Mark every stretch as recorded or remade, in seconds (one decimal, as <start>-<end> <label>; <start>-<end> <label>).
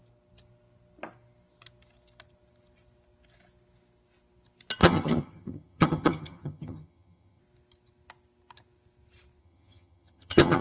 0.0-4.8 recorded; 4.8-7.4 remade; 7.4-9.4 recorded; 9.4-10.6 remade